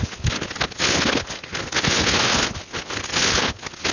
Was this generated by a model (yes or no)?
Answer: no